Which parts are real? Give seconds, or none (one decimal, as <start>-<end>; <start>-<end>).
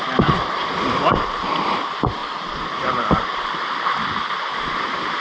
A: 0.0-5.2